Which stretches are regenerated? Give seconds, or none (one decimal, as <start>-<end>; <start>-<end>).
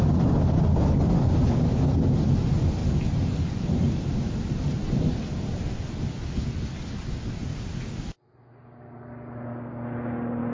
2.8-5.2